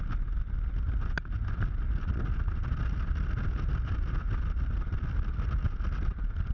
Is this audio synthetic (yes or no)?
no